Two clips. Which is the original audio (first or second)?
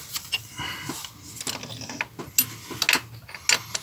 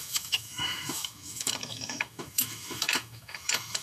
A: first